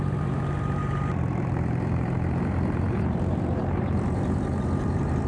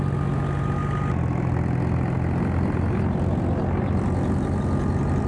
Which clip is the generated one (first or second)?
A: first